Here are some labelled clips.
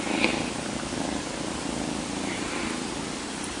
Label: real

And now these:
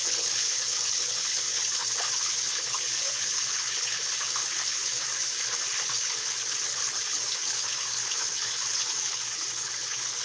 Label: fake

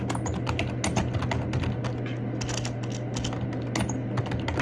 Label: real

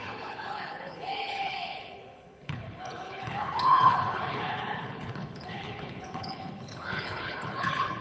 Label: fake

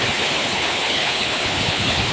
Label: fake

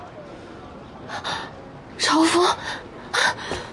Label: real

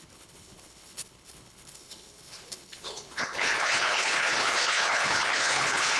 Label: fake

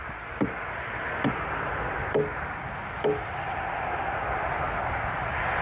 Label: real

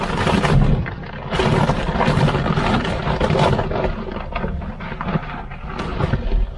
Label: real